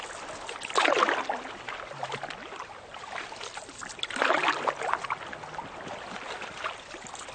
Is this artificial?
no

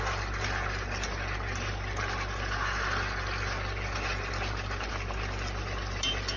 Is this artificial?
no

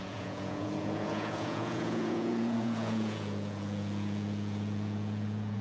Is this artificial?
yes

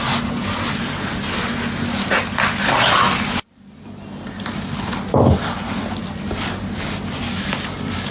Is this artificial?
no